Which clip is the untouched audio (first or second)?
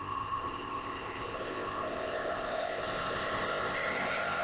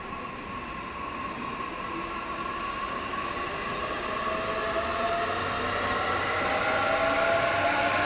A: second